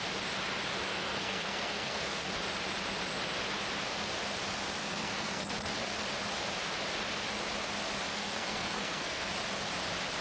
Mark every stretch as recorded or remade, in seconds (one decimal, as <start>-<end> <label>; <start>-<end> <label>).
0.0-0.9 recorded; 0.9-2.3 remade; 2.3-4.8 recorded; 4.8-5.5 remade; 5.5-8.1 recorded; 8.1-9.3 remade; 9.3-10.2 recorded